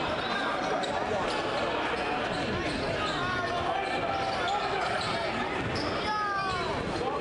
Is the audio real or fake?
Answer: real